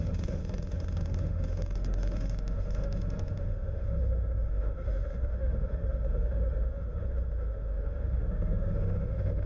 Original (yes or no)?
no